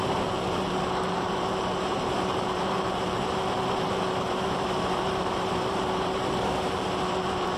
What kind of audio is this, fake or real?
fake